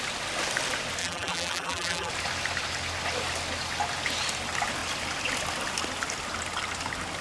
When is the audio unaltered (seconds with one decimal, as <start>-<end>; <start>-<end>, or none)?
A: 0.0-1.0; 2.1-7.2